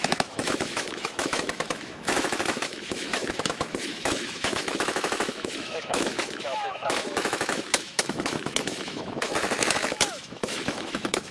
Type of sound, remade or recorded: remade